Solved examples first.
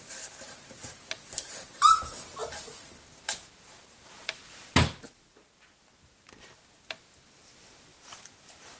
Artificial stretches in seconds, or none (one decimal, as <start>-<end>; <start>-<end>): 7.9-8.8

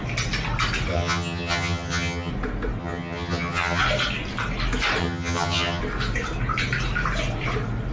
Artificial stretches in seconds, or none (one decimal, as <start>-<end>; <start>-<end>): 0.9-2.3; 2.8-3.8; 5.0-5.8

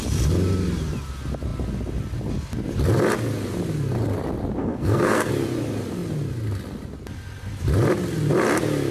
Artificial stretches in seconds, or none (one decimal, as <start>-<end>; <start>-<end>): 4.6-5.3

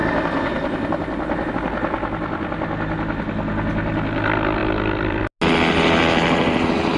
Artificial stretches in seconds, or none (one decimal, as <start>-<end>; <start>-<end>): 4.6-5.2